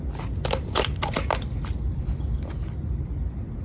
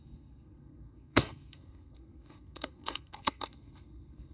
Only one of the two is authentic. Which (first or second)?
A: first